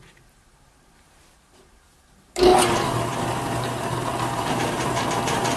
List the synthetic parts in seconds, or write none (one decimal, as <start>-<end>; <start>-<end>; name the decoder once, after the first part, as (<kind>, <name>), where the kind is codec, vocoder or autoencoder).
0.0-5.6 (vocoder, BigVGAN v2)